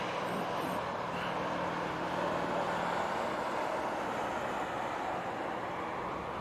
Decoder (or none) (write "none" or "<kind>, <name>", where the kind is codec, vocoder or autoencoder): none